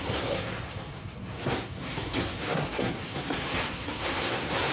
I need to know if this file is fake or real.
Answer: fake